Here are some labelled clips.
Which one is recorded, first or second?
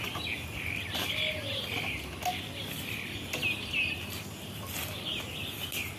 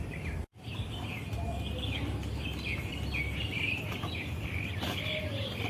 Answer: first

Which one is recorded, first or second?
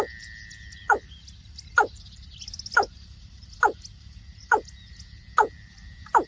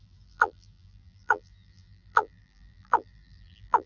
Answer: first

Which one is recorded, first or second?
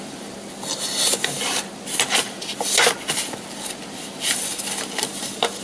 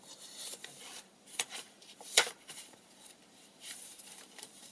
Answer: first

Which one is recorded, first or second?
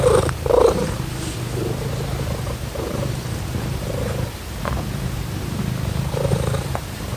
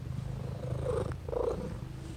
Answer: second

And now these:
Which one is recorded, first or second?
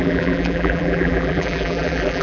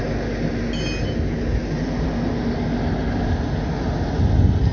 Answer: second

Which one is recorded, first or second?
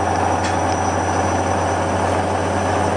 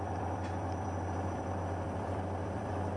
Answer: first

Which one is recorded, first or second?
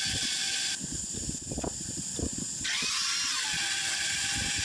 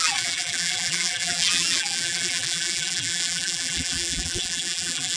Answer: first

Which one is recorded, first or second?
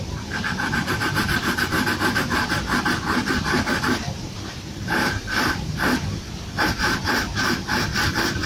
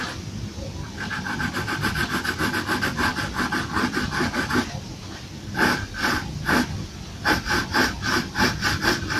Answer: second